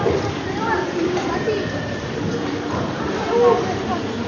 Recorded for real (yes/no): no